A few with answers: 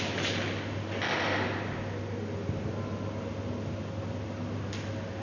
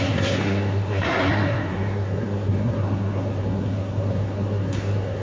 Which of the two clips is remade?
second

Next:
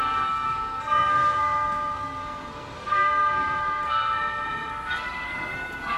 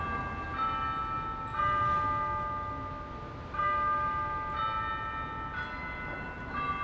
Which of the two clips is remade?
first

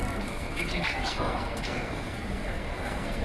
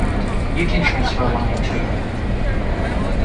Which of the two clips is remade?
first